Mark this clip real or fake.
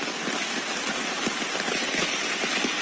real